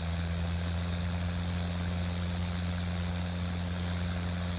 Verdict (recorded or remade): recorded